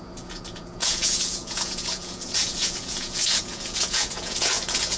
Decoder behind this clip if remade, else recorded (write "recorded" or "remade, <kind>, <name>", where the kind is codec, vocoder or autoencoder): remade, vocoder, Vocos